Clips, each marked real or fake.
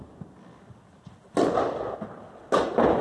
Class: real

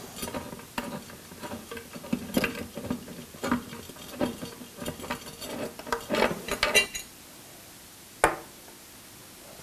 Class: real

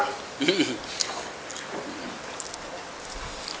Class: real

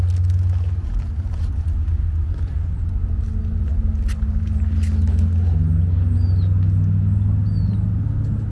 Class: real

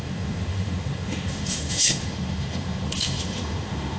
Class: fake